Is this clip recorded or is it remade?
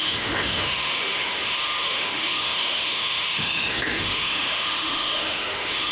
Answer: remade